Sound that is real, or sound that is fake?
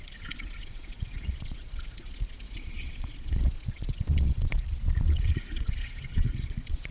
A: fake